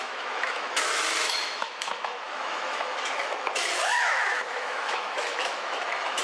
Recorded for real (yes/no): no